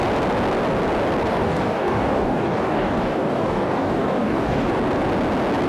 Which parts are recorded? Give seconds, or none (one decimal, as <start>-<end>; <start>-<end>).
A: 0.0-1.3; 4.7-5.7